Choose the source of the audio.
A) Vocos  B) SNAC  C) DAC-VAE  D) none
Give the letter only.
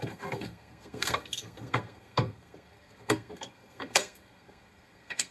B